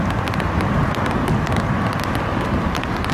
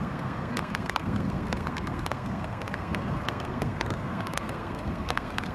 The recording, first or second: first